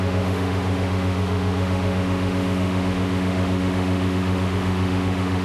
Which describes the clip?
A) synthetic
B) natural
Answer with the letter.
A